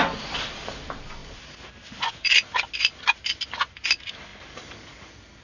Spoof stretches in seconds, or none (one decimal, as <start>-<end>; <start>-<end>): none

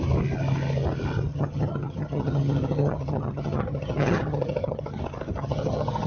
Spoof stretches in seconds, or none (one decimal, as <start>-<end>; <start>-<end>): 1.3-5.0; 5.4-6.1

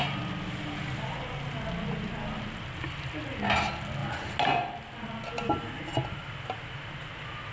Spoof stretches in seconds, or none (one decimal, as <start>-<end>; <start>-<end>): none

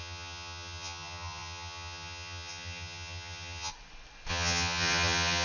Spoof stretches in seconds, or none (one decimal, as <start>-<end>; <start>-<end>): 0.0-3.7; 4.3-5.4

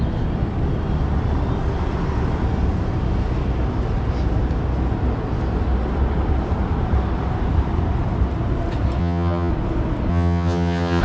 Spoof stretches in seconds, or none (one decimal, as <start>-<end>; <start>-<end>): 9.0-9.5; 10.1-11.0

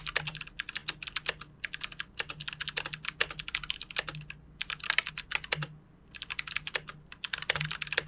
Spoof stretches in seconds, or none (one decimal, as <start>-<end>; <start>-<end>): none

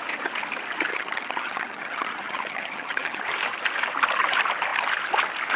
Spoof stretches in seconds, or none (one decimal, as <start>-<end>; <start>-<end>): 0.9-3.2